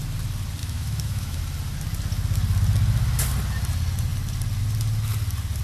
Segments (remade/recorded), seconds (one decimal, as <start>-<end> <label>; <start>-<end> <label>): 0.0-0.6 recorded; 0.6-1.4 remade; 1.4-5.6 recorded